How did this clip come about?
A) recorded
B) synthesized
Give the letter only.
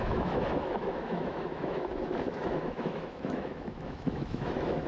B